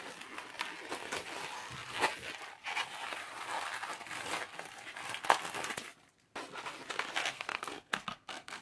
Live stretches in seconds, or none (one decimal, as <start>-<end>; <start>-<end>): 0.0-7.2